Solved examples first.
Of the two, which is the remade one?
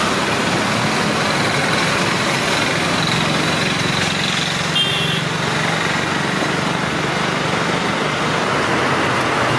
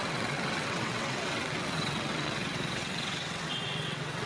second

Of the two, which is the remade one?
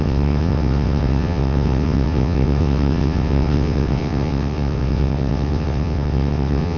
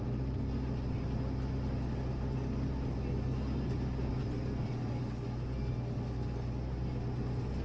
first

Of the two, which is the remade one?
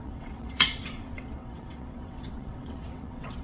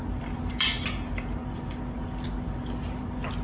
first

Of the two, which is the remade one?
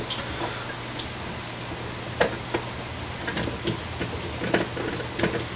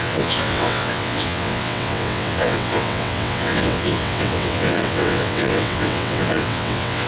second